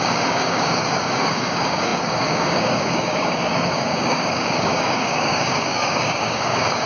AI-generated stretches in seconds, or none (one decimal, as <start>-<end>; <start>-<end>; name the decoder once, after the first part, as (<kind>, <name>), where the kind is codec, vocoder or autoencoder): 0.0-6.9 (codec, DAC)